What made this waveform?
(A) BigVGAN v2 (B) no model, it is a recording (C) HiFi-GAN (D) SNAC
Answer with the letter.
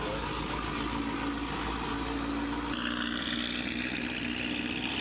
B